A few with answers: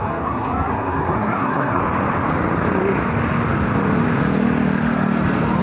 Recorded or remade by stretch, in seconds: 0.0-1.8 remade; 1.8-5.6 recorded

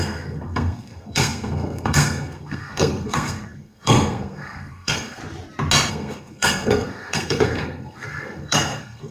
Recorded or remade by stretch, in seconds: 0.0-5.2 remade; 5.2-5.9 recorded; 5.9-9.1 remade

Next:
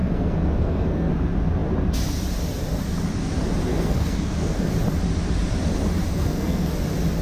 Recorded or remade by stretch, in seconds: 0.0-1.1 remade; 1.1-3.7 recorded; 3.7-4.7 remade; 4.7-6.1 recorded; 6.1-6.7 remade; 6.7-7.2 recorded